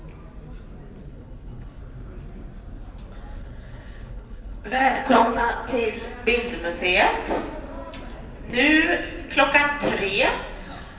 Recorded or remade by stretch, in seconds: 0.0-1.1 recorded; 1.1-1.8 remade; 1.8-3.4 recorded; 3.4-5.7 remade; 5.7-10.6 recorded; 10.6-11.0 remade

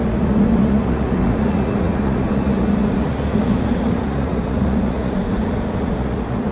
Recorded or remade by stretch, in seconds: 0.0-6.5 remade

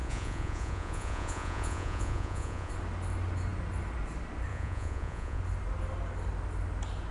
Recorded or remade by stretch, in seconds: 0.0-2.7 remade; 2.7-4.5 recorded; 4.5-5.4 remade; 5.4-7.1 recorded

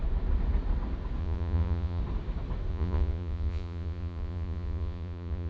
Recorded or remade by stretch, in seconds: 0.0-1.2 recorded; 1.2-2.0 remade; 2.0-2.7 recorded; 2.7-5.5 remade

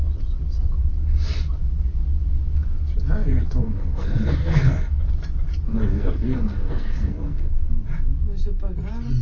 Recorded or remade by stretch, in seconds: 0.0-3.6 recorded; 3.6-5.0 remade; 5.0-5.7 recorded; 5.7-7.7 remade; 7.7-9.2 recorded